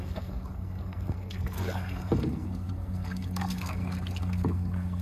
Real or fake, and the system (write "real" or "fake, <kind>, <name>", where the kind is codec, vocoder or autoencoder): fake, codec, SNAC